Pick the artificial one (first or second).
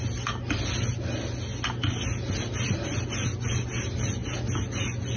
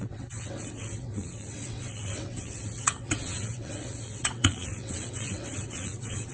second